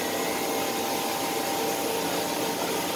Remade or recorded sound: recorded